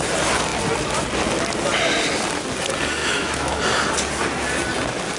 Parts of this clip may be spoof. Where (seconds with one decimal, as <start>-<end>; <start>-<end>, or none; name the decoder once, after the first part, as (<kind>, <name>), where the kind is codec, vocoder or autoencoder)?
3.0-3.6 (autoencoder, DAC-VAE)